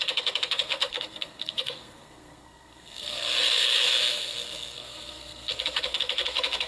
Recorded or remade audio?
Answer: remade